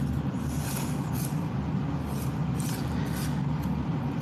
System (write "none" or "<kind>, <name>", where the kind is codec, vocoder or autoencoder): none